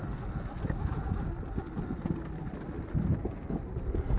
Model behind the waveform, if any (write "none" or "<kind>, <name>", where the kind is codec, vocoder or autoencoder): none